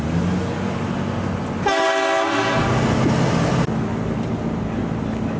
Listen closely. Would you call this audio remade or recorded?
recorded